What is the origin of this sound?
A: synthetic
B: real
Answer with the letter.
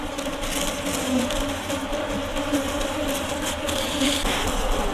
B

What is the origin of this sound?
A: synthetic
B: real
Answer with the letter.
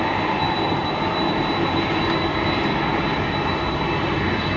B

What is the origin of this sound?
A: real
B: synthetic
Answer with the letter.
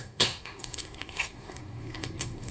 B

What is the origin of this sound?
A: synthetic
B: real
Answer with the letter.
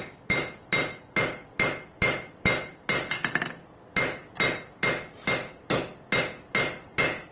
B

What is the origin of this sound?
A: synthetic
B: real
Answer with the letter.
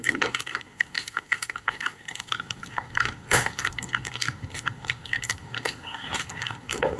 A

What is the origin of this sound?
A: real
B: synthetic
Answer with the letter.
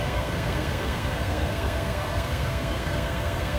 B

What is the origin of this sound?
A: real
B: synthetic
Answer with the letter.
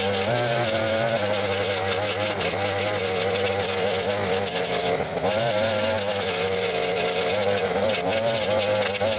A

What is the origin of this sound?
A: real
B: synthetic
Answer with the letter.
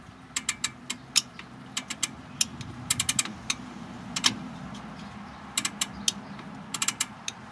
A